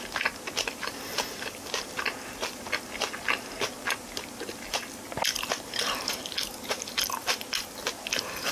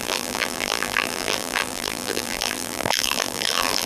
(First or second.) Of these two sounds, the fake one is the second